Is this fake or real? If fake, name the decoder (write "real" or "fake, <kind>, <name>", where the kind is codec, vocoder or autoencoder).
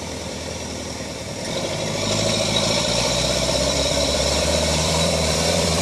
fake, vocoder, BigVGAN v2